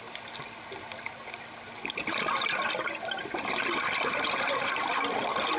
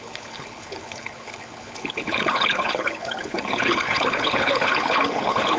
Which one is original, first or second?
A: first